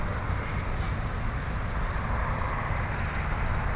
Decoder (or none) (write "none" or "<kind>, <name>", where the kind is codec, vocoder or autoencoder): none